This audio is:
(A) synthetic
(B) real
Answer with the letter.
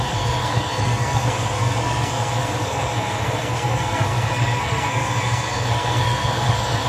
A